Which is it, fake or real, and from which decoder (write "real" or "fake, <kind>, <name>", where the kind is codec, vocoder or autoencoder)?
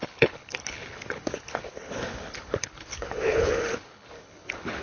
fake, codec, HILCodec